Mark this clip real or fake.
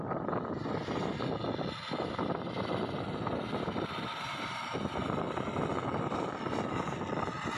real